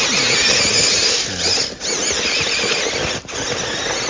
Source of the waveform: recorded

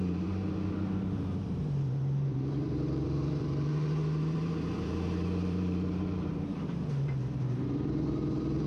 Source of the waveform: remade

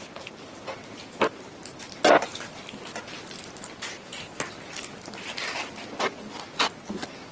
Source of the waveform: recorded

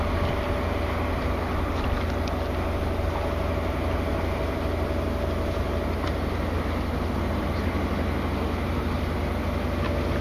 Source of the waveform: recorded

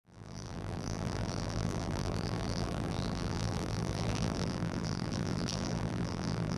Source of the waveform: remade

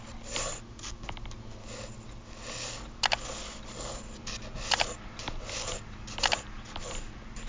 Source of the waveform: recorded